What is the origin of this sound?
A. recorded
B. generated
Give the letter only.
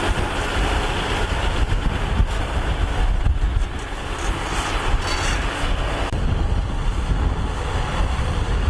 A